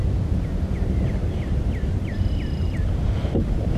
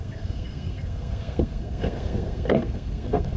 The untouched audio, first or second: first